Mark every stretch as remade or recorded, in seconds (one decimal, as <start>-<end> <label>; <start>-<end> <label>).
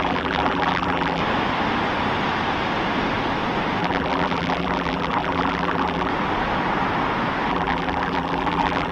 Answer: 0.0-1.2 remade; 1.2-3.8 recorded; 3.8-6.1 remade; 6.1-7.5 recorded; 7.5-8.9 remade